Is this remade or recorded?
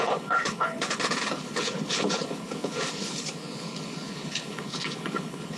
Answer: remade